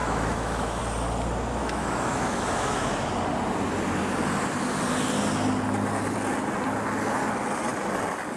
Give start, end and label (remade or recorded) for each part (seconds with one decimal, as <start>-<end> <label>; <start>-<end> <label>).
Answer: 0.0-0.8 remade; 0.8-1.6 recorded; 1.6-3.1 remade; 3.1-8.4 recorded